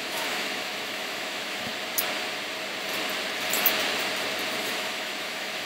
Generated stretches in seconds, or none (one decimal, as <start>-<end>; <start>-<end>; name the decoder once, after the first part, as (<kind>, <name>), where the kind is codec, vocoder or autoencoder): 0.0-1.7 (autoencoder, DAC-VAE); 4.6-5.6